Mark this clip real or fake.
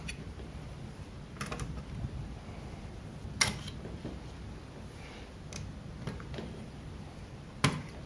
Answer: real